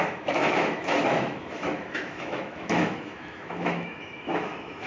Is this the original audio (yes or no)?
no